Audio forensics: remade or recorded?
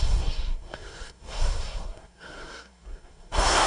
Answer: remade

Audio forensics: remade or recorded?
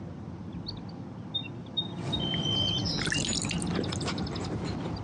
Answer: recorded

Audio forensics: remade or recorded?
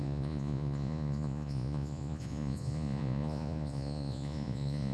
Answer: remade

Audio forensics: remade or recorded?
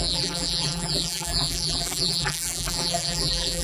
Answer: remade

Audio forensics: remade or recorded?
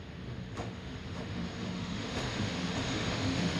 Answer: remade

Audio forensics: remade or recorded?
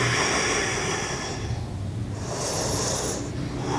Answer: recorded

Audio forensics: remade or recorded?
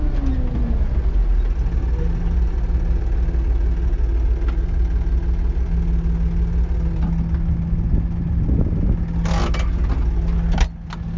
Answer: recorded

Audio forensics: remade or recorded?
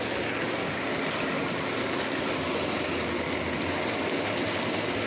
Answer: recorded